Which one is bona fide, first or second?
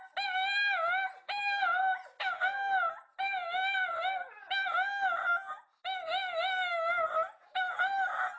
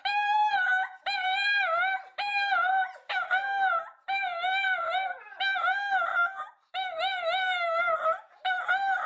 first